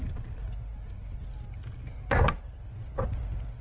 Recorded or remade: recorded